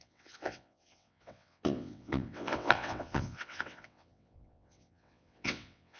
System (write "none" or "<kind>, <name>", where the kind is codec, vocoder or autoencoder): vocoder, WaveNeXt